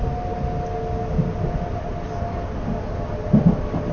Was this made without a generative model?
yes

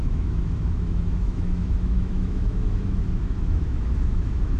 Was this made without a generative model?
no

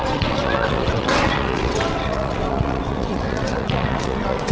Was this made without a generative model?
no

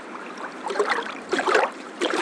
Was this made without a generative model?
no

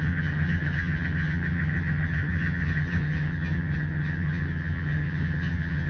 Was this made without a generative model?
no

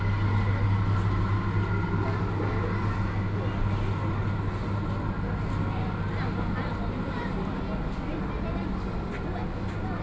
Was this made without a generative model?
yes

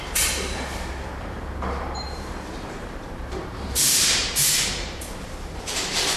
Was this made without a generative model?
no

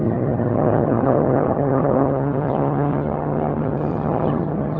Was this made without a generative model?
no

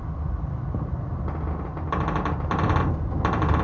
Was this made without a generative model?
yes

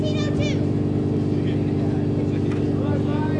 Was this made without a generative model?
yes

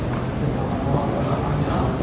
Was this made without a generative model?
yes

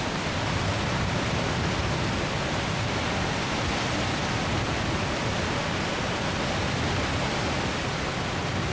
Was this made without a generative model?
yes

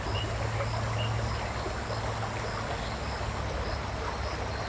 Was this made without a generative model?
yes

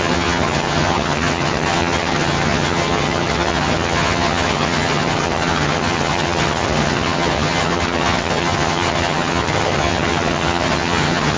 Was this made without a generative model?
no